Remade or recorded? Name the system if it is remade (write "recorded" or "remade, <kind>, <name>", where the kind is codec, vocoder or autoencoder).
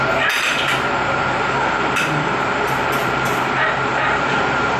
remade, vocoder, BigVGAN v2